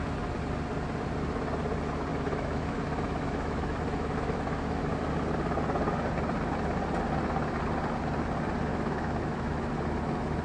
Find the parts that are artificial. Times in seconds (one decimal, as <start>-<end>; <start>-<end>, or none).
2.1-4.8; 8.7-9.7

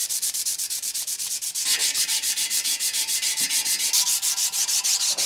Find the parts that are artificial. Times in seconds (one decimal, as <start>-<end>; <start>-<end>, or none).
0.0-1.3; 1.8-3.4

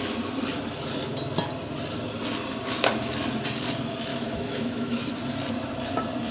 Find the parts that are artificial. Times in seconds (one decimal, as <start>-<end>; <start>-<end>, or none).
4.1-5.1

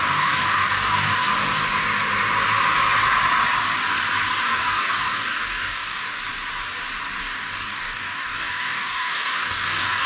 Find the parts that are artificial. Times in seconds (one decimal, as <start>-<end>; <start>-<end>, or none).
0.0-1.3; 4.4-6.2; 7.2-10.1